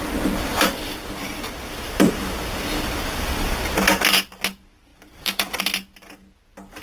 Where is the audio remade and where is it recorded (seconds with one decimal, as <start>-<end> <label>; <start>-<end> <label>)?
0.0-0.5 recorded; 0.5-2.4 remade; 2.4-3.1 recorded; 3.1-3.6 remade; 3.6-4.9 recorded; 4.9-5.6 remade; 5.6-6.8 recorded